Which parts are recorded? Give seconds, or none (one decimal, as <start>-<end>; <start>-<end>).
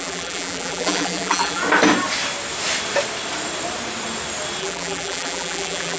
1.6-4.6